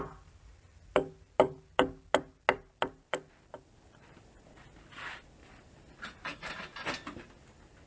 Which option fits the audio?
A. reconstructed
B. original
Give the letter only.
B